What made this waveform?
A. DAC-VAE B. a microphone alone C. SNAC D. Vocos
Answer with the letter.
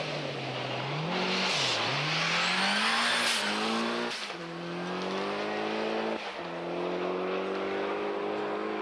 B